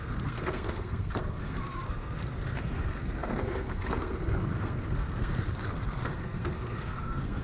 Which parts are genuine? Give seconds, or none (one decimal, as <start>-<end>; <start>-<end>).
none